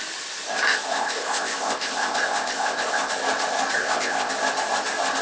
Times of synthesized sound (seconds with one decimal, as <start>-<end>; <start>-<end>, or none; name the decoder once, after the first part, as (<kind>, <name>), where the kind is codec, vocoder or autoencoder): 0.9-3.1 (codec, ZipCodec); 3.8-4.3